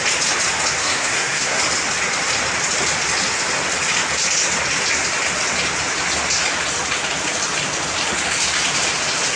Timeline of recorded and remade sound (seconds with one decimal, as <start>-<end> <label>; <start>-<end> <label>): 0.0-0.8 recorded; 0.8-1.6 remade; 1.6-9.4 recorded